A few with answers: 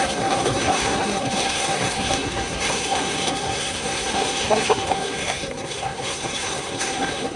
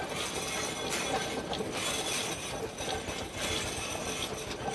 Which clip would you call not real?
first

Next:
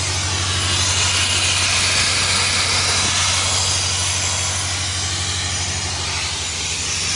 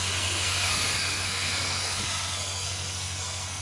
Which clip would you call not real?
second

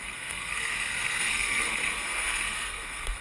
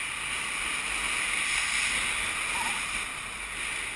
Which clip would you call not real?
first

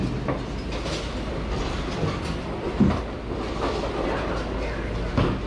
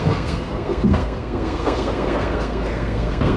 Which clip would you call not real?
second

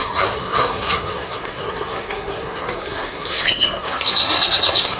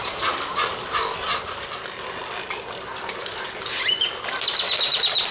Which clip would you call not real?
first